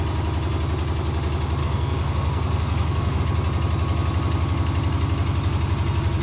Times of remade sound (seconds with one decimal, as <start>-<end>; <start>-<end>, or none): 1.6-3.2